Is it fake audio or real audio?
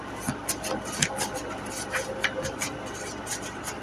real